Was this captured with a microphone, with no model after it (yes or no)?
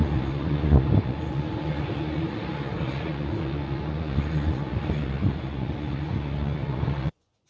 no